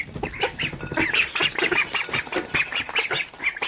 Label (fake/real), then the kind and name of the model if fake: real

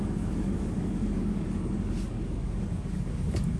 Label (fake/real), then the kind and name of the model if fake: fake, codec, DAC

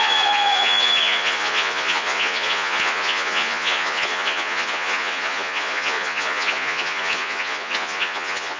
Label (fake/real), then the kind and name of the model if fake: fake, vocoder, Vocos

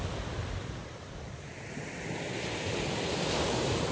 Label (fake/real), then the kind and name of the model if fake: real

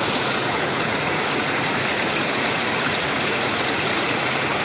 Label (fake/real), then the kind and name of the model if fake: fake, vocoder, Vocos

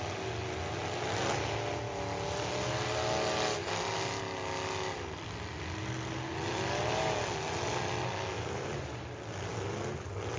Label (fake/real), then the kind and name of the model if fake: real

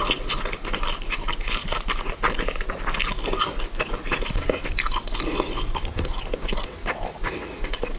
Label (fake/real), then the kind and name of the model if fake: real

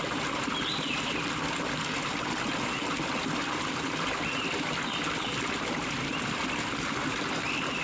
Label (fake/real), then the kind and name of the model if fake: real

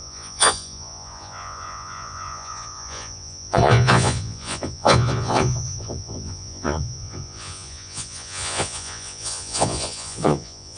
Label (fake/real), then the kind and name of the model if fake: fake, vocoder, Vocos